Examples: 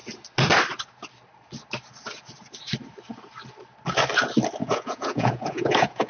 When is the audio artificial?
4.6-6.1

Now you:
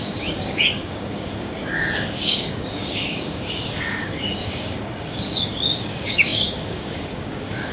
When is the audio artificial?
0.0-7.7

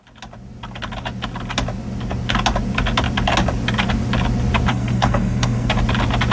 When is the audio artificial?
4.7-5.7

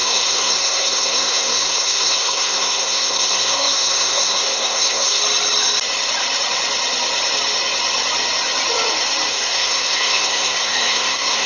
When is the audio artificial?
0.0-5.2; 9.3-11.5

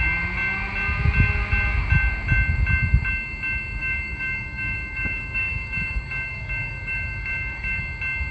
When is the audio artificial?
3.8-7.8

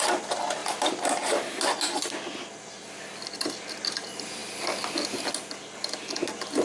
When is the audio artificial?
0.6-1.6